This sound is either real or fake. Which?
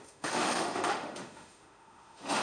fake